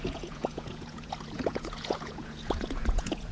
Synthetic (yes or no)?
yes